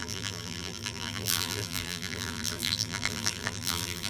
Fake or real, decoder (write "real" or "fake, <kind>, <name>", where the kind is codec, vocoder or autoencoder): fake, vocoder, BigVGAN v2